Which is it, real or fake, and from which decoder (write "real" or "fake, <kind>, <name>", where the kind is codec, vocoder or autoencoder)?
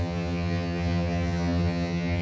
fake, vocoder, HiFi-GAN